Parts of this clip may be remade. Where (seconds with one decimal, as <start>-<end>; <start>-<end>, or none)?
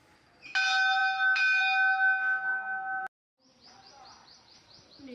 none